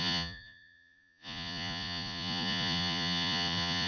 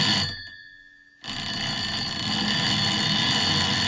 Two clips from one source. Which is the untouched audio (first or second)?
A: second